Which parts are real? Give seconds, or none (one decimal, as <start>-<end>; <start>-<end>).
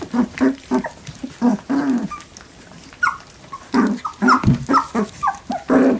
0.0-6.0